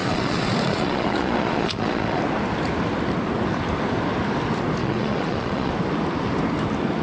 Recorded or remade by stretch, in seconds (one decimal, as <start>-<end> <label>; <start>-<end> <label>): 0.0-2.2 remade; 2.2-4.8 recorded; 4.8-5.7 remade; 5.7-7.0 recorded